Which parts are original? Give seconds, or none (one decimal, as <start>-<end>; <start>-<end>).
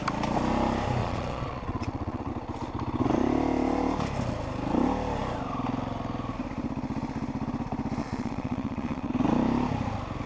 0.0-1.0; 2.3-8.0; 9.1-10.3